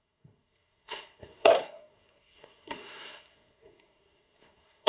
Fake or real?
fake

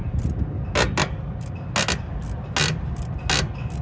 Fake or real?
real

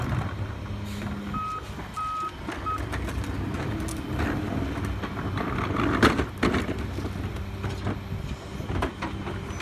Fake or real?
real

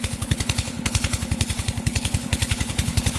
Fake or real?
fake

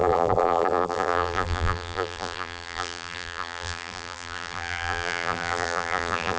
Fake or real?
fake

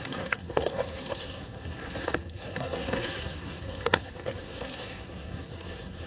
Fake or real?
fake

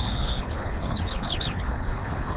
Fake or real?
fake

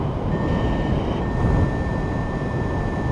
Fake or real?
real